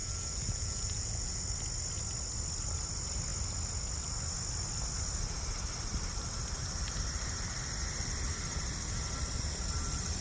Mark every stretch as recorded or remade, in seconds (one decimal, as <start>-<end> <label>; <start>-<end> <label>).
0.0-1.4 remade; 1.4-10.2 recorded